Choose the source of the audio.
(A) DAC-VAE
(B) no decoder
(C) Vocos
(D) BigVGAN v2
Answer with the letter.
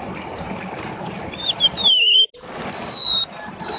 B